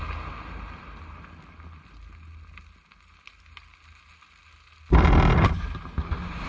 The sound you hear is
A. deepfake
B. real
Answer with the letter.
B